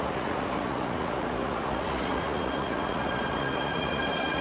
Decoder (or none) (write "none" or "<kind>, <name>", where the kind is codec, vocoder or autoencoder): vocoder, Vocos